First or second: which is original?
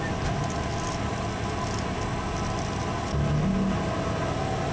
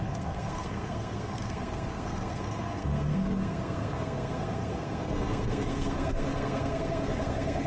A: first